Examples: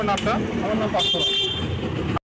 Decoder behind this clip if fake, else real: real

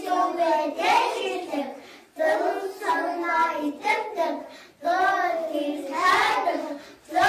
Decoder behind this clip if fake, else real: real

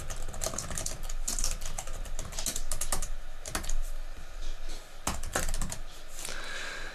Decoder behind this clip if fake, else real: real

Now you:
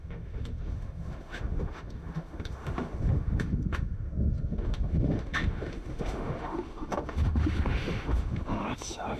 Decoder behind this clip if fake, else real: fake, autoencoder, DAC-VAE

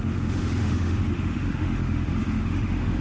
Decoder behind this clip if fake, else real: fake, autoencoder, DAC-VAE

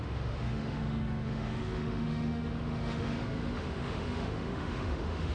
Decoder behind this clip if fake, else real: fake, autoencoder, DAC-VAE